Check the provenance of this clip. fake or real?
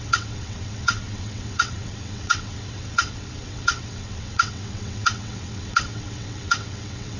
fake